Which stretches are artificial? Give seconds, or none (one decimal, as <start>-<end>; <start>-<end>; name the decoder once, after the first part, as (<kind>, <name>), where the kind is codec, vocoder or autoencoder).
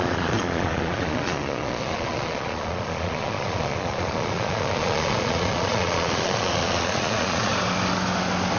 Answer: 0.0-7.5 (vocoder, Vocos)